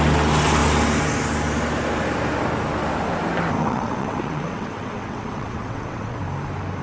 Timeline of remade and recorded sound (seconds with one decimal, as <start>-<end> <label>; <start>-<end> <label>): 0.0-3.6 recorded; 3.6-6.2 remade; 6.2-6.8 recorded